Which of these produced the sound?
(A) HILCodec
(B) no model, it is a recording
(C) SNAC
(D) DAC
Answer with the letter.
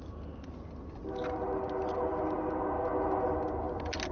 B